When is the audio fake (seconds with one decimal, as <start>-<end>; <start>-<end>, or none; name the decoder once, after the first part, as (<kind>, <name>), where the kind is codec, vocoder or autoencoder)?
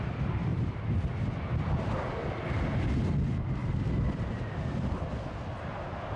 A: 0.5-1.1 (vocoder, BigVGAN v2); 3.6-5.0